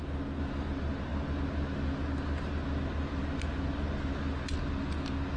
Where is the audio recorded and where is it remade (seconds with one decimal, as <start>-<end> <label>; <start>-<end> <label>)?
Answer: 0.0-5.4 recorded